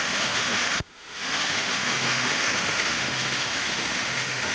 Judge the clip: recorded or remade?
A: remade